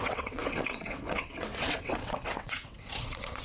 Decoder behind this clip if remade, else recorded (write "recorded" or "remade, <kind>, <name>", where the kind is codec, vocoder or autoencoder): remade, vocoder, WaveNeXt